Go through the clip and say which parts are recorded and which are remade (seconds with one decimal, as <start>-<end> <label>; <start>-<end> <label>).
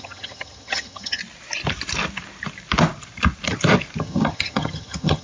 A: 0.0-1.2 remade; 1.2-4.0 recorded; 4.0-5.2 remade